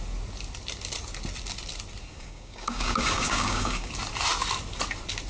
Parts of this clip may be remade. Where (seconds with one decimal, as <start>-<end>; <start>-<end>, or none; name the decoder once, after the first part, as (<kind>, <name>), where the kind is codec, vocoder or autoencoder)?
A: 2.0-3.9 (codec, DAC)